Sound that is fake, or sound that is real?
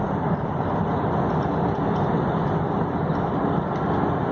real